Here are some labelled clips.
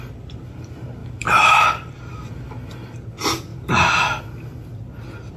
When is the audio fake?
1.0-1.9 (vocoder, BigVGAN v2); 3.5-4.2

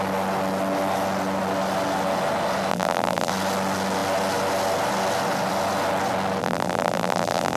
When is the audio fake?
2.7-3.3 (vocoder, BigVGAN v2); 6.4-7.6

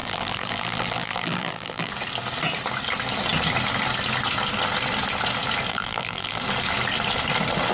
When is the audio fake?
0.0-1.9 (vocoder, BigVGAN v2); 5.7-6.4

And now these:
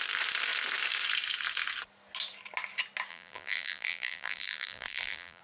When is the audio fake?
3.1-5.4 (vocoder, BigVGAN v2)